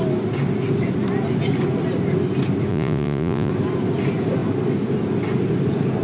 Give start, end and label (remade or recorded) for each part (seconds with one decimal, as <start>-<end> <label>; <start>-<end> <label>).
0.0-2.7 recorded; 2.7-3.5 remade; 3.5-6.0 recorded